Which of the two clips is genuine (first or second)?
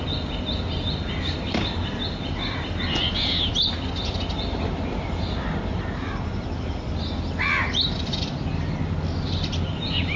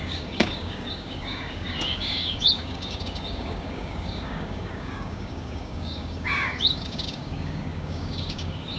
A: first